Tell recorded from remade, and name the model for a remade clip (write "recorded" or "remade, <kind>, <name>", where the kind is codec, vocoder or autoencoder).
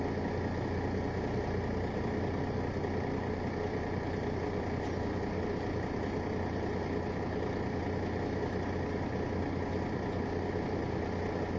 recorded